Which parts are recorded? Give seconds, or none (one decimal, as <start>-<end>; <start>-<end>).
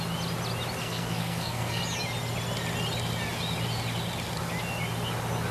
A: 0.0-0.8; 1.8-5.5